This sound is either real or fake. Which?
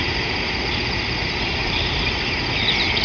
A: real